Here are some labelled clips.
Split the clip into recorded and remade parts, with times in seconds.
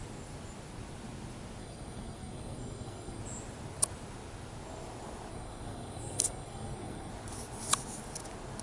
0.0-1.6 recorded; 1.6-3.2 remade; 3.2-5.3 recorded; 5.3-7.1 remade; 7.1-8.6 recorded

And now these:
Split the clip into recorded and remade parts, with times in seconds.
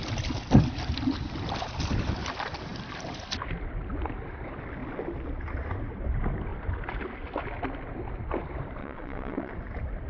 0.0-8.8 recorded; 8.8-9.5 remade; 9.5-10.1 recorded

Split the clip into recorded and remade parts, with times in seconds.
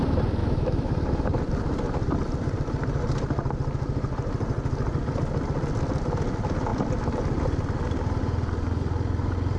0.0-0.4 recorded; 0.4-0.9 remade; 0.9-9.6 recorded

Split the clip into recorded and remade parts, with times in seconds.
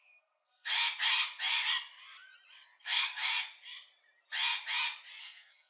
0.0-0.7 remade; 0.7-2.8 recorded; 2.8-3.3 remade; 3.3-5.2 recorded; 5.2-5.7 remade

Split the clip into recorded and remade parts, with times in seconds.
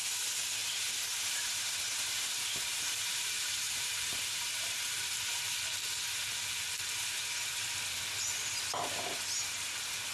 0.0-0.6 recorded; 0.6-5.4 remade; 5.4-10.1 recorded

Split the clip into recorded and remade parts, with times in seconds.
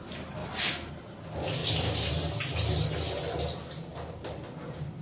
0.0-0.4 recorded; 0.4-0.9 remade; 0.9-3.9 recorded; 3.9-4.6 remade; 4.6-5.0 recorded